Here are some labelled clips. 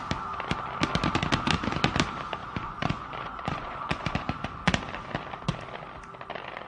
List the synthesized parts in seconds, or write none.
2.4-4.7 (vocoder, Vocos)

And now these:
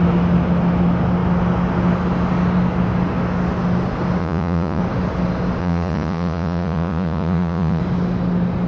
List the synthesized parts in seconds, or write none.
4.2-4.8 (vocoder, Vocos); 5.6-7.8

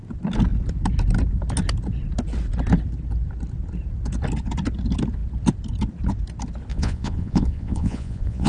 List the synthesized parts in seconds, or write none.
6.7-8.5 (vocoder, Vocos)

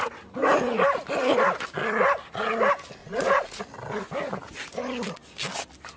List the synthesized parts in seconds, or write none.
3.0-3.6 (vocoder, Vocos)